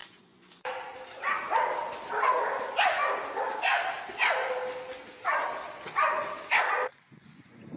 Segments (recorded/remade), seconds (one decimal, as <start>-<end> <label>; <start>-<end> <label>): 0.0-0.7 remade; 0.7-6.9 recorded; 6.9-7.8 remade